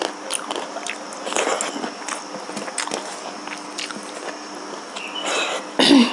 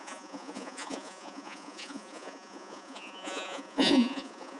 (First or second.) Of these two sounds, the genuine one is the first